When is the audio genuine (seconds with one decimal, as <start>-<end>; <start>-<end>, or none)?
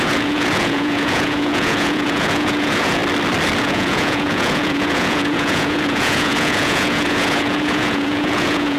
3.0-3.6